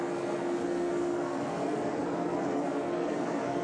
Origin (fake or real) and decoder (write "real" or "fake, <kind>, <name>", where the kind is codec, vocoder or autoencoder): fake, codec, SNAC